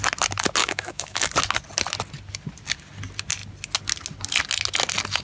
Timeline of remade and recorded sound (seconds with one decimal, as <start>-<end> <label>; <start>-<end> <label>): 0.0-0.6 recorded; 0.6-1.3 remade; 1.3-5.2 recorded